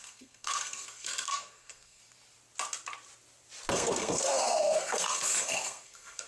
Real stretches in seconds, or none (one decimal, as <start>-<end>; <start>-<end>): 2.0-3.7